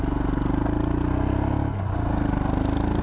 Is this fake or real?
real